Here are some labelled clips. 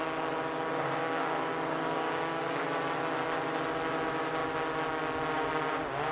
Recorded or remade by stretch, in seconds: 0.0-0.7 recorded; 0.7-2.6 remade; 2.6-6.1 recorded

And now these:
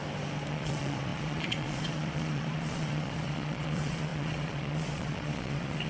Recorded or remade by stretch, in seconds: 0.0-0.5 recorded; 0.5-5.9 remade

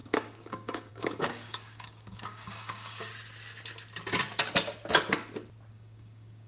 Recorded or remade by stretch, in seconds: 0.0-3.1 remade; 3.1-5.7 recorded; 5.7-6.5 remade